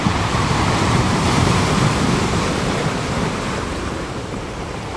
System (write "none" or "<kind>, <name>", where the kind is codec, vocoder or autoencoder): vocoder, BigVGAN v2